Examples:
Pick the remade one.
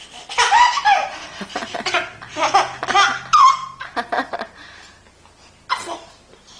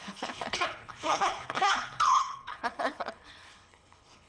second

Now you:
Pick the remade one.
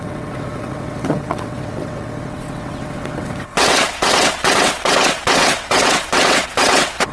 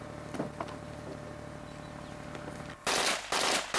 first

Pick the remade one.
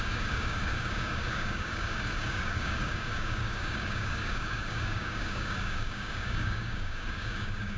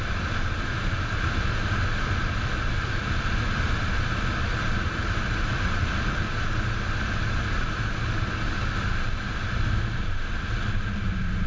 first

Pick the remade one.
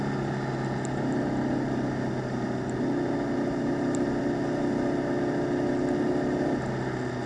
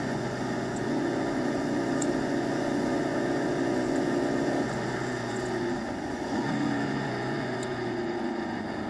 second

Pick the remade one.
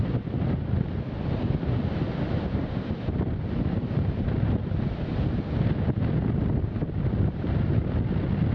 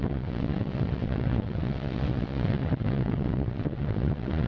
second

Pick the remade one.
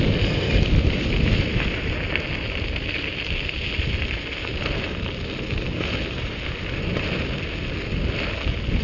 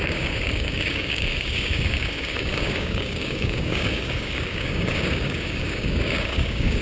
second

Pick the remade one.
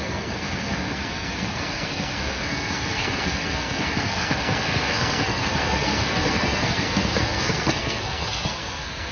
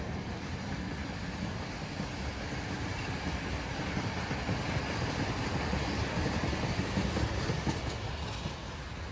first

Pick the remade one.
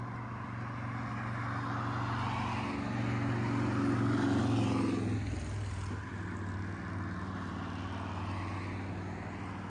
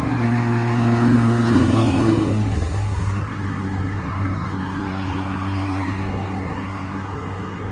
second